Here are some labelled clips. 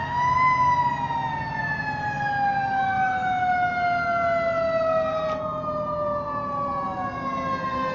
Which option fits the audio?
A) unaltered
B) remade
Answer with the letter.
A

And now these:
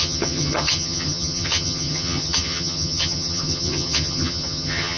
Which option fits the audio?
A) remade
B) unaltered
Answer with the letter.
A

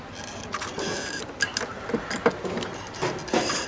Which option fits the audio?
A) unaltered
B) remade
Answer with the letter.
A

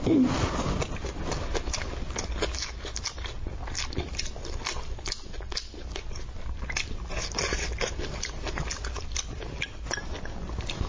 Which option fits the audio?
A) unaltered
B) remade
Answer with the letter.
A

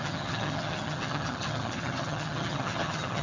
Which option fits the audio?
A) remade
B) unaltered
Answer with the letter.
A